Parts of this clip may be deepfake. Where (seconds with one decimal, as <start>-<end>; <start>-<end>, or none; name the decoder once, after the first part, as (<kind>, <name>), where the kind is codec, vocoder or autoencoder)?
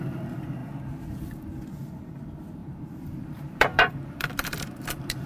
2.6-5.3 (vocoder, BigVGAN v2)